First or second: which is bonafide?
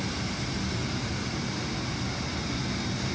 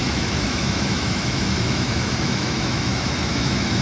first